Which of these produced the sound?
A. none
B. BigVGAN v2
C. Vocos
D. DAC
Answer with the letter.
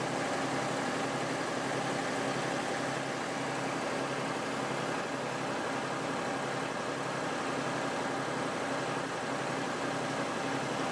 A